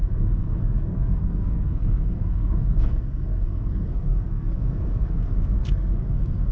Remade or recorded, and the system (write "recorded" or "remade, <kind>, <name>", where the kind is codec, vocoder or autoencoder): remade, codec, SNAC